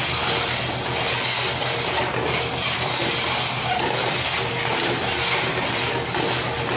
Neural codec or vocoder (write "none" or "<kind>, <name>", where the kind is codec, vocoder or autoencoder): none